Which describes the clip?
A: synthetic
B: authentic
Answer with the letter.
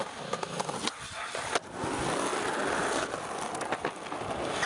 B